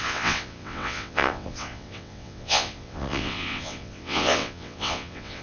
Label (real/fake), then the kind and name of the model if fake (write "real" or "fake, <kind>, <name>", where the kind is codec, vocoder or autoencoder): fake, vocoder, WaveNeXt